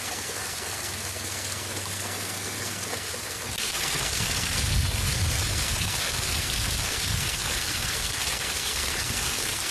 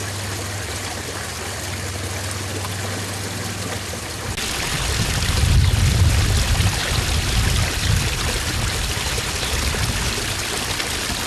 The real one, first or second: second